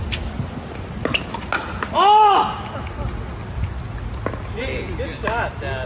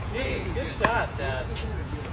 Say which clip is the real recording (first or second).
first